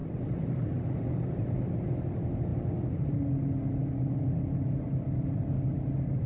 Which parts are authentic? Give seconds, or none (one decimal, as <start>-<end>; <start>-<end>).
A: 0.0-6.3